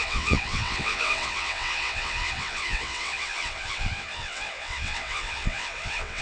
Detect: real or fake fake